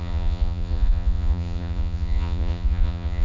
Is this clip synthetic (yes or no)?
yes